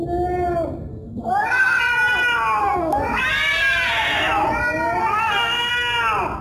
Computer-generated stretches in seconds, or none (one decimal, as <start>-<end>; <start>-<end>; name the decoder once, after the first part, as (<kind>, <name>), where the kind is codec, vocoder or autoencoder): 0.9-1.8 (codec, SNAC); 2.6-3.2; 5.0-5.7